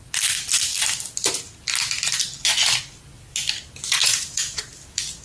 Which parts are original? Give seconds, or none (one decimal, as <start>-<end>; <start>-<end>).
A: 0.0-4.0; 4.6-5.2